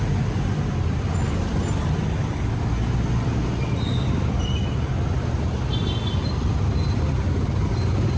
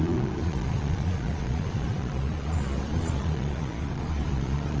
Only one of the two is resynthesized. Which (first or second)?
second